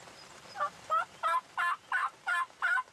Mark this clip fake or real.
fake